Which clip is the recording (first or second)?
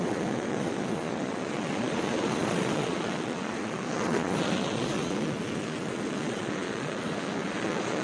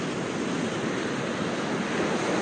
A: second